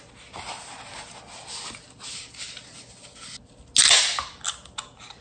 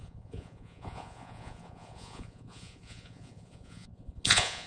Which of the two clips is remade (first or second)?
second